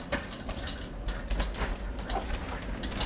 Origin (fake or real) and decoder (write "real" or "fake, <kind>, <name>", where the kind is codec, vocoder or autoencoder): real